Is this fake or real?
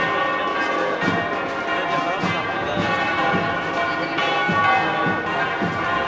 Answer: real